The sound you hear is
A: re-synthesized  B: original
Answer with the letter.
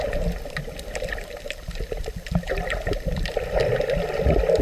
B